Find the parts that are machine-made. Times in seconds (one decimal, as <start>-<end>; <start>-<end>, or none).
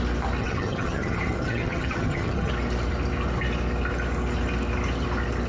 0.4-2.5